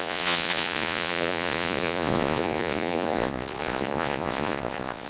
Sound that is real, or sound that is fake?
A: fake